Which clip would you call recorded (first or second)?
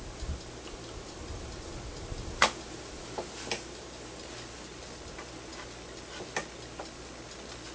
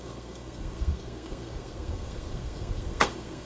first